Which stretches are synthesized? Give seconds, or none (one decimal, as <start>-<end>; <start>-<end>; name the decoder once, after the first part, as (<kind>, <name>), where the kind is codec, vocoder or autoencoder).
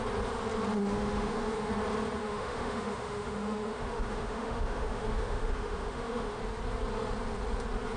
0.8-1.7 (autoencoder, DAC-VAE); 2.2-6.4